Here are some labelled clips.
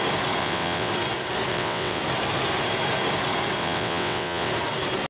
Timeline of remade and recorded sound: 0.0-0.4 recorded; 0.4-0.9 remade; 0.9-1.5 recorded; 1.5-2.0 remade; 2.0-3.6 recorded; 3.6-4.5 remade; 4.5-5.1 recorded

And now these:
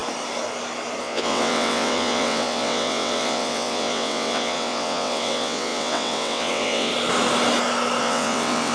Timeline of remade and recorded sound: 0.0-1.0 recorded; 1.0-6.9 remade; 6.9-8.0 recorded; 8.0-8.7 remade

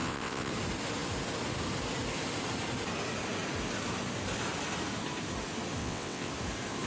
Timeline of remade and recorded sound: 0.0-0.5 remade; 0.5-5.8 recorded; 5.8-6.3 remade; 6.3-6.9 recorded

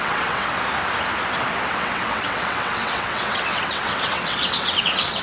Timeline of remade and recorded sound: 0.0-0.5 remade; 0.5-1.7 recorded; 1.7-5.2 remade